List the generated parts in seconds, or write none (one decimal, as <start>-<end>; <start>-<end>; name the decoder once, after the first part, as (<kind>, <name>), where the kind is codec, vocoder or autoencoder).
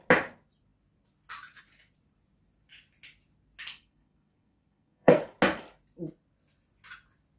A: 3.7-5.2 (codec, SNAC)